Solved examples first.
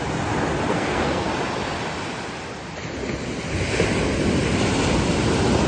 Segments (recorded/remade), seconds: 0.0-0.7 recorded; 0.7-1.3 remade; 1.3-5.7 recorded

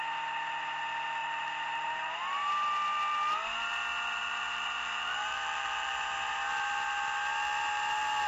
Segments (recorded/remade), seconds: 0.0-1.2 recorded; 1.2-2.5 remade; 2.5-4.2 recorded; 4.2-5.9 remade; 5.9-8.3 recorded

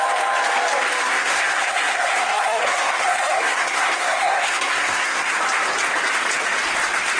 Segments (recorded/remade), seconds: 0.0-1.0 recorded; 1.0-5.3 remade; 5.3-7.2 recorded